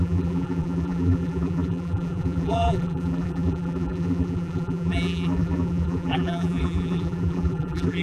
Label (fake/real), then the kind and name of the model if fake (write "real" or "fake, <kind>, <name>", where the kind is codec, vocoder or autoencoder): fake, vocoder, BigVGAN v2